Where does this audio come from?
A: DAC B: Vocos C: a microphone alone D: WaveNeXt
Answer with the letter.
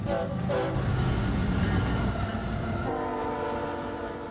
C